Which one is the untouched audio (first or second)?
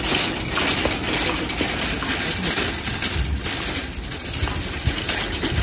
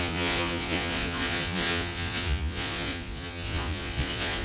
first